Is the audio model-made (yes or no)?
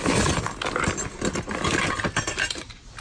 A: no